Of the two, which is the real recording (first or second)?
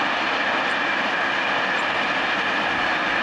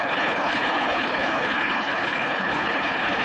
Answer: first